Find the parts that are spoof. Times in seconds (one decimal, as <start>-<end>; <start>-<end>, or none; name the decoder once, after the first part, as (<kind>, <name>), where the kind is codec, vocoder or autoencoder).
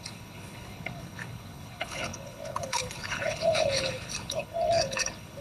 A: 0.0-5.4 (codec, HILCodec)